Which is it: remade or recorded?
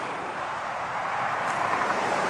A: remade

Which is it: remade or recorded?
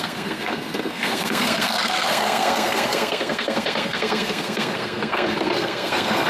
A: remade